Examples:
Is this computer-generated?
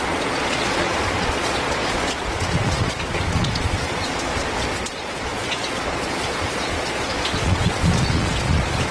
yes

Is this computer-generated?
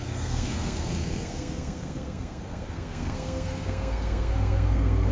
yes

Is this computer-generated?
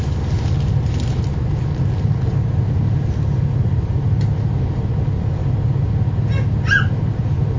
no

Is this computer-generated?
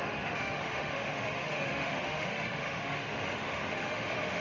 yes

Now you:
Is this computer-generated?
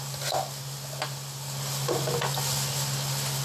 no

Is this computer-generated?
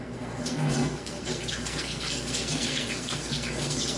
yes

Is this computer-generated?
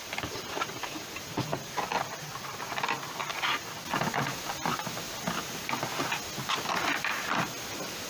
no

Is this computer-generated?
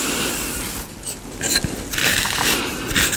no